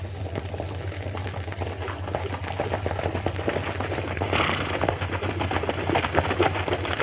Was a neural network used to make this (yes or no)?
no